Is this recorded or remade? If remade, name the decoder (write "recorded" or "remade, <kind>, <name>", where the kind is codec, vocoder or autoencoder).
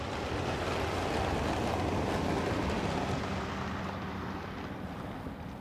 recorded